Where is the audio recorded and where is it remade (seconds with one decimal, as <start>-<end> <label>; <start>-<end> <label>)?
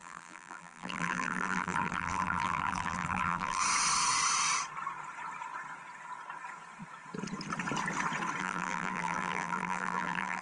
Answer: 0.0-3.6 remade; 3.6-8.4 recorded; 8.4-10.4 remade